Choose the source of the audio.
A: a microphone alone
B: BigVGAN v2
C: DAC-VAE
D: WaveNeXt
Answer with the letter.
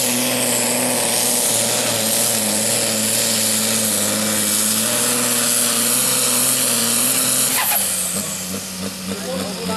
A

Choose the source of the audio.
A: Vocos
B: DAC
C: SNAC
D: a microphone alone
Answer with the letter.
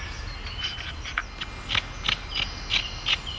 D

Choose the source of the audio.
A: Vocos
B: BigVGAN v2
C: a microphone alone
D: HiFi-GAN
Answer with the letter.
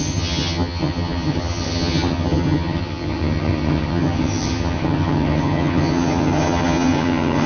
D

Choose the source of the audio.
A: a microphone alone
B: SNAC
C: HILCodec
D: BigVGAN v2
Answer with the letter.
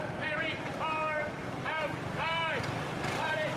D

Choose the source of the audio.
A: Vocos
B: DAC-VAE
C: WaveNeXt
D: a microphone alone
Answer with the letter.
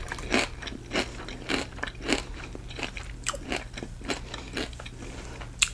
D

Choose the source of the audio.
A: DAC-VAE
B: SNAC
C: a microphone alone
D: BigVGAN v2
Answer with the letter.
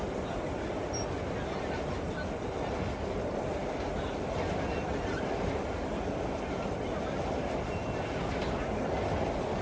C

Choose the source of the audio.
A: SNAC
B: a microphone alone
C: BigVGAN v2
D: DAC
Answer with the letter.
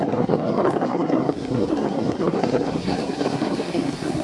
A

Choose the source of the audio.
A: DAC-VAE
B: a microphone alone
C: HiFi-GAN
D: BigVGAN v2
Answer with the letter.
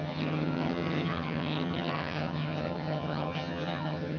C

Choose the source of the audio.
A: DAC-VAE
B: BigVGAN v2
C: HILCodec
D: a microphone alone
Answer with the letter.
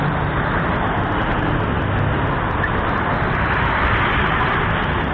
D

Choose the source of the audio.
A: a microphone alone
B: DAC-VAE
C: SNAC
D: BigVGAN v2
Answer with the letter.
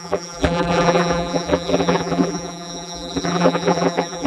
D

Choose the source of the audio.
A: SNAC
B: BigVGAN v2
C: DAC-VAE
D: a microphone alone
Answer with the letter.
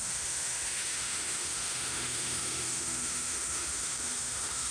C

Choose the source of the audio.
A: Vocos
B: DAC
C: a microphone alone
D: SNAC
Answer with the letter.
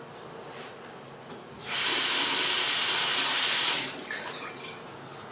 C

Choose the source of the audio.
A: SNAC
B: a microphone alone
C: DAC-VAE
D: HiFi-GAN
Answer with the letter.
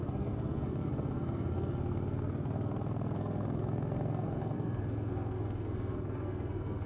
A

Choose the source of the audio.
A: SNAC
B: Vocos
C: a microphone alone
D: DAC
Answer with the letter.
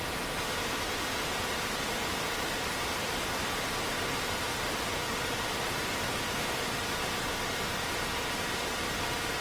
C